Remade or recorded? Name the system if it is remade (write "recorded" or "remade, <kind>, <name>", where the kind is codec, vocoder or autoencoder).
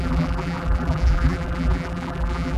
remade, vocoder, BigVGAN v2